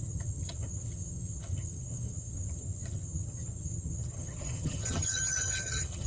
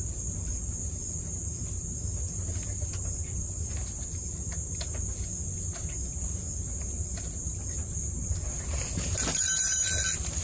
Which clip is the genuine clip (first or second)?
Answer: second